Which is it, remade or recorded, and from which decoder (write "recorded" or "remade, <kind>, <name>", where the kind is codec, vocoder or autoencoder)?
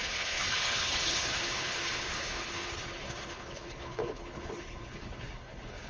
remade, codec, HILCodec